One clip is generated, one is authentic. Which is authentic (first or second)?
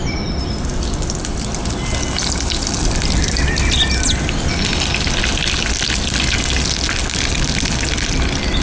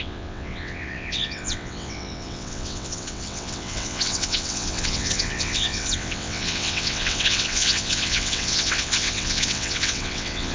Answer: first